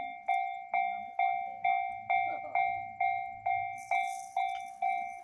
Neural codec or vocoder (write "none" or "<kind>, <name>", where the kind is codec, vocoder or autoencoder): none